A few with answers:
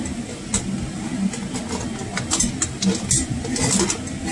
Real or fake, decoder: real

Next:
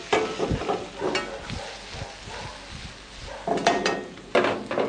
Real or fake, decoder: real